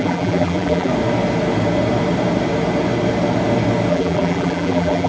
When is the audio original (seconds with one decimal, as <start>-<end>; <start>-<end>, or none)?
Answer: 0.9-3.9